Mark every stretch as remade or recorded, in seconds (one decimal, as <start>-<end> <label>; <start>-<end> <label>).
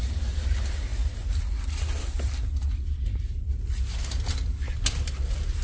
0.0-5.6 recorded